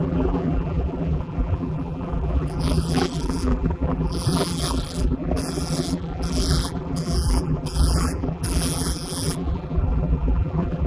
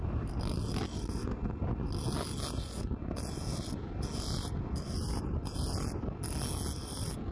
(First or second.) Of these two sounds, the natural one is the second